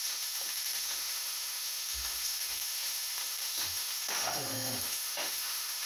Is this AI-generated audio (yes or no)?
yes